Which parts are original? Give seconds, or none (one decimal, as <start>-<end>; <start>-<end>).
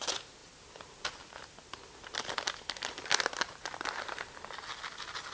0.0-5.3